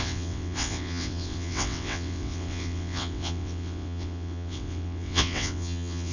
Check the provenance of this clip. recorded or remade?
remade